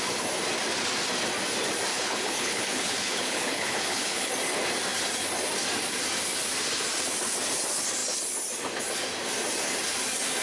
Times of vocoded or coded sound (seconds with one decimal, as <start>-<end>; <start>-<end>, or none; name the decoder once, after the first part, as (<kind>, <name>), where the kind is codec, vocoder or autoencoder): 1.9-4.3 (codec, HILCodec)

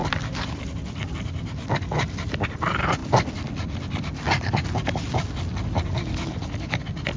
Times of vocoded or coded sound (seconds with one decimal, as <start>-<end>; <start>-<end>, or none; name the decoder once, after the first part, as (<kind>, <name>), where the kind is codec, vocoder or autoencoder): 0.0-3.0 (vocoder, BigVGAN v2); 6.8-7.2

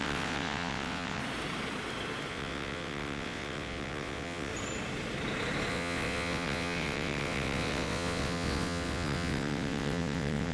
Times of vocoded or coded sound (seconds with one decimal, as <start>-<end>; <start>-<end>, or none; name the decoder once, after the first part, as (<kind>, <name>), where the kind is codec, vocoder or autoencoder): 0.0-1.2 (vocoder, WaveNeXt); 2.3-4.5; 5.7-10.5

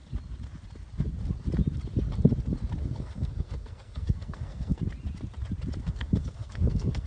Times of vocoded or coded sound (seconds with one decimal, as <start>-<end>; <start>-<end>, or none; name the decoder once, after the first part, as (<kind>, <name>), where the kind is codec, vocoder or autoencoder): 2.8-4.8 (codec, SNAC); 5.8-7.1

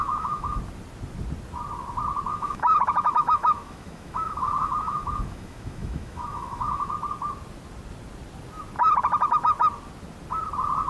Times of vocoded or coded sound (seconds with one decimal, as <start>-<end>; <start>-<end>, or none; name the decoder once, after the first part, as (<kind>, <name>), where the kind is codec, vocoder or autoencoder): 0.0-0.6 (autoencoder, DAC-VAE); 2.3-6.9

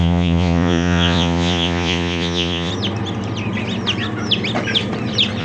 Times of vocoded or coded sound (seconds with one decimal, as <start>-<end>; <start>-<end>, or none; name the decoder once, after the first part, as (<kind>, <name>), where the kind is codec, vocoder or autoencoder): 0.0-2.7 (vocoder, Vocos)